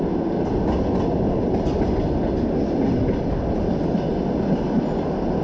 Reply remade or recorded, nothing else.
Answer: recorded